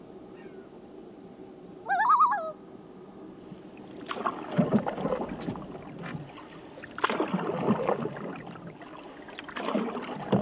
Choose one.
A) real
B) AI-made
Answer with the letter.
A